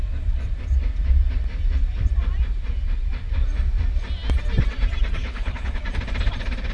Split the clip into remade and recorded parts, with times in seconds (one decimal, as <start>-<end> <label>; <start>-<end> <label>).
0.0-5.2 recorded; 5.2-5.8 remade; 5.8-6.7 recorded